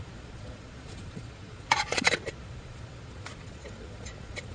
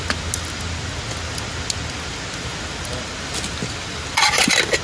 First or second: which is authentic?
second